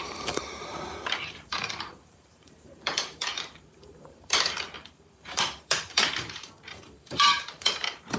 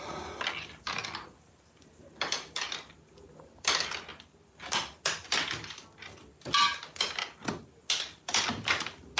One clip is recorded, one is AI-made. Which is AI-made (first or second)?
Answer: first